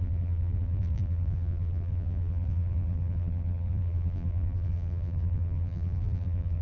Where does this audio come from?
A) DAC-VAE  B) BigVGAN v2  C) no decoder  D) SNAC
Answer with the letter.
B